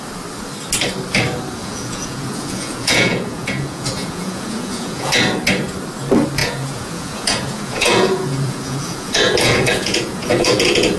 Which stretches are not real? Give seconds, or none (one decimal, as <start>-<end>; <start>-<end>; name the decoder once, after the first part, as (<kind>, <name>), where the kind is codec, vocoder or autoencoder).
1.6-5.1 (vocoder, Vocos); 6.4-11.0